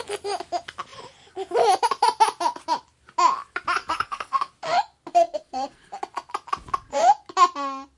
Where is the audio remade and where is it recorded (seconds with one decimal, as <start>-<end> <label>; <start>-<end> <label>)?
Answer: 0.0-3.8 recorded; 3.8-4.5 remade; 4.5-5.1 recorded; 5.1-5.9 remade; 5.9-8.0 recorded